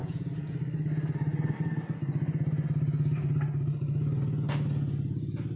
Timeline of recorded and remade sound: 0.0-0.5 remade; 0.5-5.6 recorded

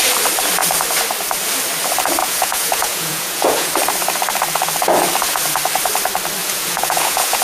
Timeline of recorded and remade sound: 0.0-2.2 recorded; 2.2-3.7 remade; 3.7-6.4 recorded; 6.4-7.4 remade

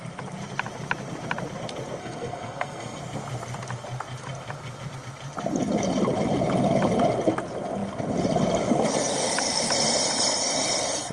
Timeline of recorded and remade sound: 0.0-2.0 recorded; 2.0-3.0 remade; 3.0-11.1 recorded

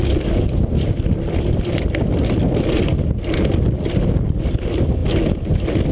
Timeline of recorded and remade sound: 0.0-5.9 recorded